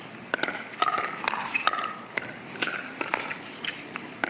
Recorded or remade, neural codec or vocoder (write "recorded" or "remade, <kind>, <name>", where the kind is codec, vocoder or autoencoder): recorded